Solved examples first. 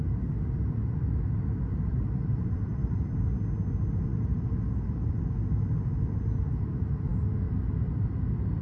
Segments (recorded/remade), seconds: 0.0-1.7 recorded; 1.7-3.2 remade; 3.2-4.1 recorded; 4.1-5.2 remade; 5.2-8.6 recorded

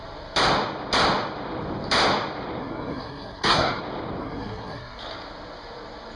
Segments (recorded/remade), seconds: 0.0-2.6 recorded; 2.6-3.8 remade; 3.8-4.2 recorded; 4.2-5.0 remade; 5.0-6.2 recorded

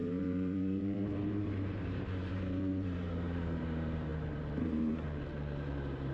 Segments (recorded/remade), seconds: 0.0-6.1 remade